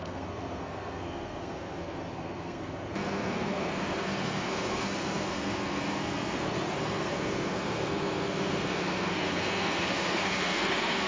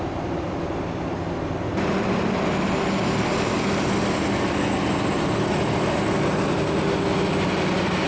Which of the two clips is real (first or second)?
second